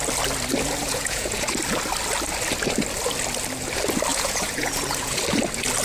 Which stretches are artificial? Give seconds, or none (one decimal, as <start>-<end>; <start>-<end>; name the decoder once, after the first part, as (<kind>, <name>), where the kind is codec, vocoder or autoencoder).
0.8-1.5 (vocoder, Vocos); 4.1-5.2